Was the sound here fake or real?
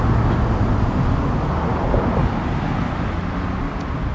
real